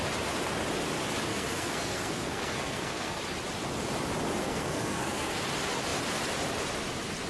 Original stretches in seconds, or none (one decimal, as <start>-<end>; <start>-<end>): 0.0-1.3; 3.2-4.4; 5.4-7.3